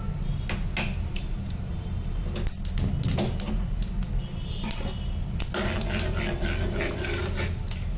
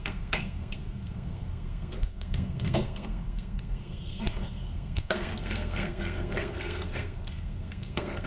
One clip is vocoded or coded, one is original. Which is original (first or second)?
first